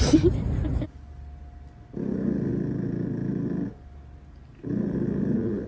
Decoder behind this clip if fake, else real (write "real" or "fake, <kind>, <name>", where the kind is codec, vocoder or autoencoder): real